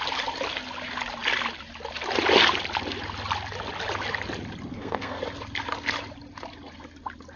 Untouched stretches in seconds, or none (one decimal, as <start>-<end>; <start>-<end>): 0.0-4.7; 5.2-7.4